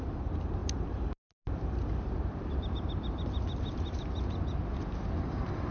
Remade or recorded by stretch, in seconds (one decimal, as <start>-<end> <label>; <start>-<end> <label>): 0.0-5.7 recorded